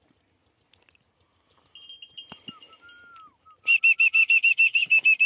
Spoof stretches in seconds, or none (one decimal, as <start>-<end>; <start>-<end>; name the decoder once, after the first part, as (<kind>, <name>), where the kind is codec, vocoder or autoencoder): 4.2-5.3 (codec, DAC)